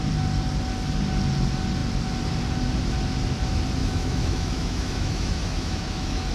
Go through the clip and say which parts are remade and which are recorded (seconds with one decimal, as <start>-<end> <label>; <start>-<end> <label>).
0.0-3.8 recorded; 3.8-6.3 remade